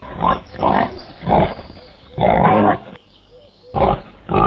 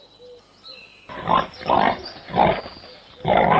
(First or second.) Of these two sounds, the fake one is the first